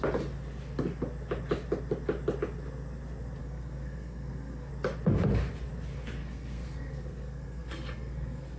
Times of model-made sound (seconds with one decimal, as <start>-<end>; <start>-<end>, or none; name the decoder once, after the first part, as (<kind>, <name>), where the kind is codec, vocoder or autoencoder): 3.4-4.7 (codec, SNAC); 6.2-8.6